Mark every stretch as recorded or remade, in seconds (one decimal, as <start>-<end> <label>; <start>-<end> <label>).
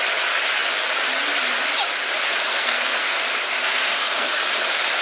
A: 0.0-2.5 recorded; 2.5-3.2 remade; 3.2-3.6 recorded; 3.6-4.3 remade; 4.3-5.0 recorded